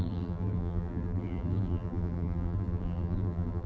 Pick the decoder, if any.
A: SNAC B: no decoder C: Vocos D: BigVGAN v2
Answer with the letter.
D